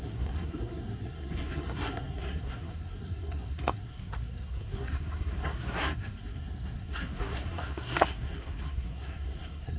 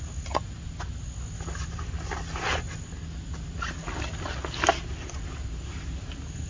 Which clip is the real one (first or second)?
second